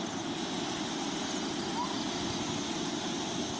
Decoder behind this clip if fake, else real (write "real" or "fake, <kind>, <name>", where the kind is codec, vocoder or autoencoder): real